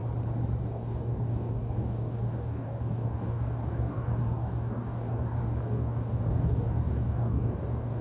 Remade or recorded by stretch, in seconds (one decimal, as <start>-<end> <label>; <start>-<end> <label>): 0.0-0.6 recorded; 0.6-8.0 remade